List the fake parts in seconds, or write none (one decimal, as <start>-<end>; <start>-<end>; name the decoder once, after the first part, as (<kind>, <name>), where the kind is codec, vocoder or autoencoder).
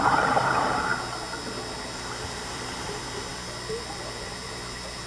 0.0-0.9 (vocoder, BigVGAN v2); 1.8-5.1